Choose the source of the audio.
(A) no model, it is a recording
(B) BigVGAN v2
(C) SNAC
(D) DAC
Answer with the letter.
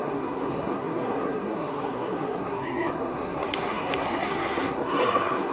C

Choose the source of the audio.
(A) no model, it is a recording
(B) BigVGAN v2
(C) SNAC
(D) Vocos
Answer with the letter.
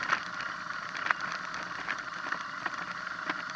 A